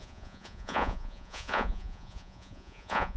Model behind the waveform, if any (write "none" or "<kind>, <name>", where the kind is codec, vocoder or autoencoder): vocoder, Vocos